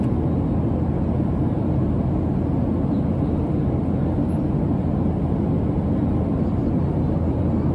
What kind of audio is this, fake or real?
real